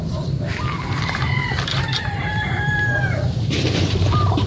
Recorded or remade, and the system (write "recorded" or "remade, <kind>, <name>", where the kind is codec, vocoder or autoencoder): remade, vocoder, BigVGAN v2